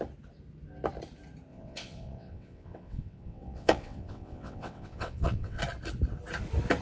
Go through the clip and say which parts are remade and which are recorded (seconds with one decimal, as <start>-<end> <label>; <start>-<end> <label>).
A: 0.0-1.5 recorded; 1.5-5.6 remade; 5.6-6.8 recorded

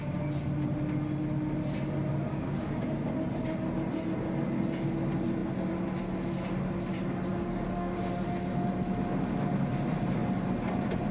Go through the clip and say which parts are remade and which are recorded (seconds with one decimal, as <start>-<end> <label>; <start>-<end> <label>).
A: 0.0-2.3 recorded; 2.3-3.1 remade; 3.1-7.3 recorded; 7.3-8.1 remade; 8.1-11.1 recorded

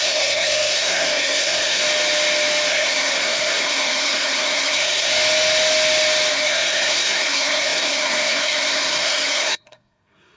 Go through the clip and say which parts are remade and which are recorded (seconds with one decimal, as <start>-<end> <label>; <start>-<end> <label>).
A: 0.0-1.8 remade; 1.8-2.7 recorded; 2.7-5.1 remade; 5.1-6.3 recorded; 6.3-10.4 remade

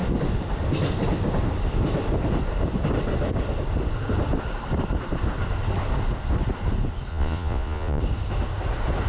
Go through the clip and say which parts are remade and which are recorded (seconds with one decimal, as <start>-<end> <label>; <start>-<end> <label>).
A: 0.0-7.1 recorded; 7.1-8.0 remade; 8.0-9.1 recorded

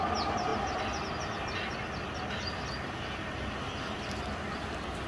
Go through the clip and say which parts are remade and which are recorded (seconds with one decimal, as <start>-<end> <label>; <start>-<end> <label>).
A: 0.0-0.5 remade; 0.5-3.6 recorded; 3.6-5.1 remade

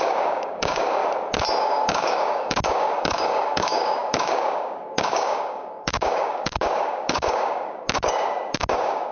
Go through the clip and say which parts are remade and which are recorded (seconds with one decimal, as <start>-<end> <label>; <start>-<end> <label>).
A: 0.0-1.0 remade; 1.0-1.6 recorded; 1.6-9.1 remade

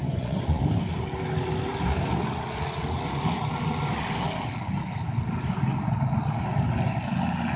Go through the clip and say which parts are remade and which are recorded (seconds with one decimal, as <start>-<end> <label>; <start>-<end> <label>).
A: 0.0-0.6 remade; 0.6-7.6 recorded

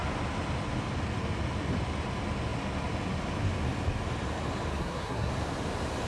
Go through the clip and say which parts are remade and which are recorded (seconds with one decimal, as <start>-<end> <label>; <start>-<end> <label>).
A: 0.0-4.7 recorded; 4.7-5.3 remade; 5.3-6.1 recorded